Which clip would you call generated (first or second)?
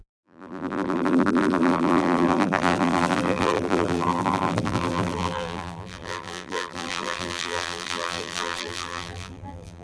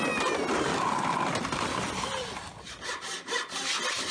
first